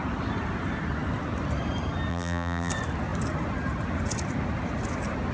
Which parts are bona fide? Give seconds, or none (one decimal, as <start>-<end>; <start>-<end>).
0.0-2.1; 2.7-5.3